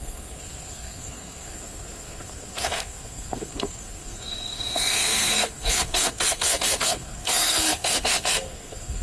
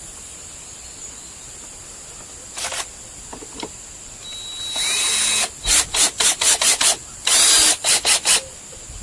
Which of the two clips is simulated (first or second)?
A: first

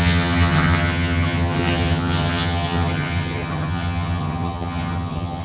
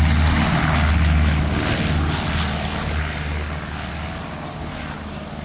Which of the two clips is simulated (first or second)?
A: first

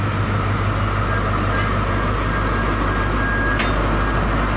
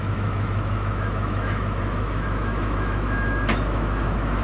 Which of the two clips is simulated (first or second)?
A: second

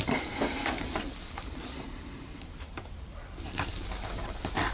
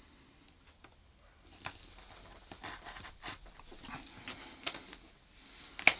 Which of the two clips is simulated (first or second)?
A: first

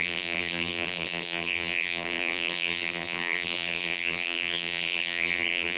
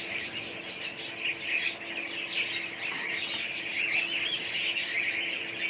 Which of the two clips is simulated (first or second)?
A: first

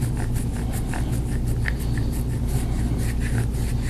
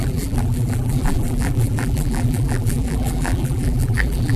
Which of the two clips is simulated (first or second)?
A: second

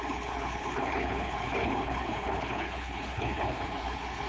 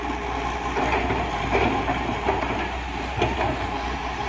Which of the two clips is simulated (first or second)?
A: first